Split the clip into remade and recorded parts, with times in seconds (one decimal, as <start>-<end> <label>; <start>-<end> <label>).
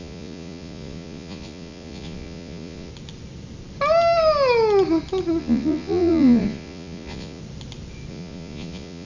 0.0-2.9 remade; 2.9-5.4 recorded; 5.4-7.4 remade; 7.4-8.1 recorded; 8.1-9.1 remade